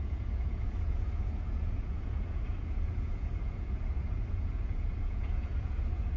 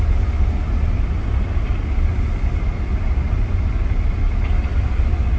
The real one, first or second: second